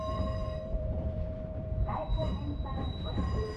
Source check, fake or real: fake